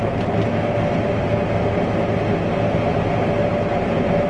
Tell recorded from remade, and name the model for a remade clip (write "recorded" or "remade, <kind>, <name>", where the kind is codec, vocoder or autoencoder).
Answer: recorded